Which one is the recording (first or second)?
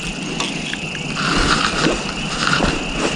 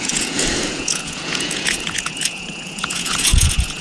first